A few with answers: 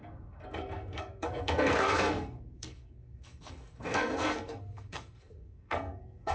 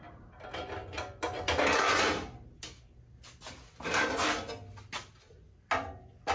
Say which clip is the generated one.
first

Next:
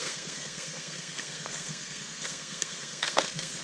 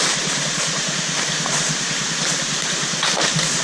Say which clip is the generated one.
first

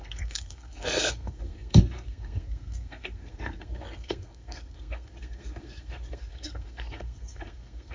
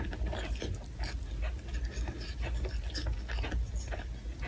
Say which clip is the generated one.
first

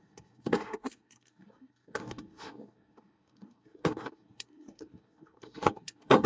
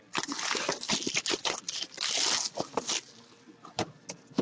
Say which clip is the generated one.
first